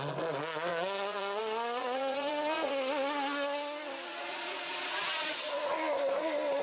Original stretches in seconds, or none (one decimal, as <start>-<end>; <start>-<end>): 0.0-0.7; 1.4-1.8; 2.7-4.1; 5.5-6.6